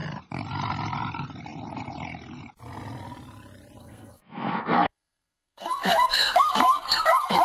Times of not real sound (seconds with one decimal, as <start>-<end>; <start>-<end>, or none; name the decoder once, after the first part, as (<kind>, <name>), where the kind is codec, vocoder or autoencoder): 3.8-7.4 (codec, SNAC)